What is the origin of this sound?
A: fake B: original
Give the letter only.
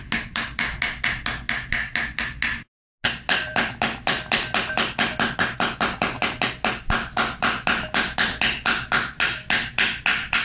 B